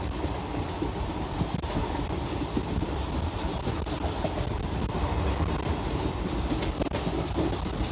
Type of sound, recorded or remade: recorded